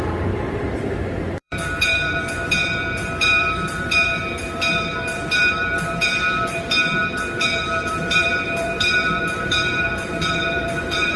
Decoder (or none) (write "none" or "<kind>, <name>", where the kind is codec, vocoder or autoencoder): vocoder, BigVGAN v2